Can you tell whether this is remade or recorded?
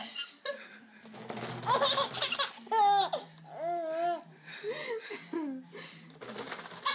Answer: recorded